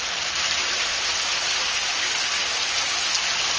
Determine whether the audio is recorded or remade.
recorded